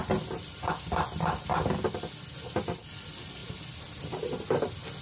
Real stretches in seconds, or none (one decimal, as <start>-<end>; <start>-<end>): 0.0-5.0